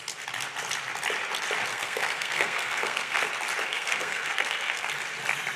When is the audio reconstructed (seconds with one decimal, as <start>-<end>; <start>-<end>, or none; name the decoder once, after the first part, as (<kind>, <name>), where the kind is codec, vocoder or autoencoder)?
1.7-3.3 (codec, SNAC); 3.7-4.9